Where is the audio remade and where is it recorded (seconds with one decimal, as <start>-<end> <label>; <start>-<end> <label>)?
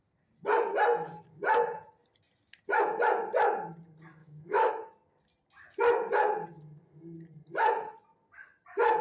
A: 0.0-4.2 recorded; 4.2-4.7 remade; 4.7-9.0 recorded